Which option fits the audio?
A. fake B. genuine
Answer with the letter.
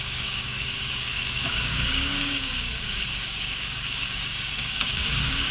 A